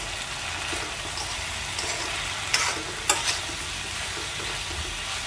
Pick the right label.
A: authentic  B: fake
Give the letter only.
A